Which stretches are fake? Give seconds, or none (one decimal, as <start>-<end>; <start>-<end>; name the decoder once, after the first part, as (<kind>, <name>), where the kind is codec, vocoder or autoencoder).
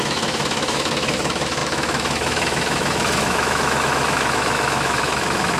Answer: 0.0-5.6 (autoencoder, DAC-VAE)